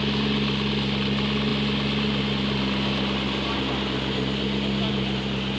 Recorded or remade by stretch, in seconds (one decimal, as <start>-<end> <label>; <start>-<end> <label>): 0.0-5.6 recorded